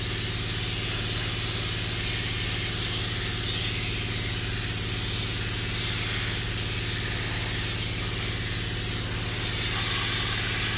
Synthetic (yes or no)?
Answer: no